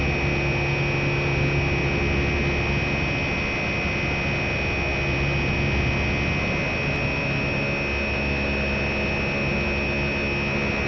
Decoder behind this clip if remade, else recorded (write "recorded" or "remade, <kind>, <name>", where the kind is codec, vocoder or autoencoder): recorded